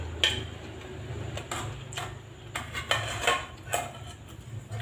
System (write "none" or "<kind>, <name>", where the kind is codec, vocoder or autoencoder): none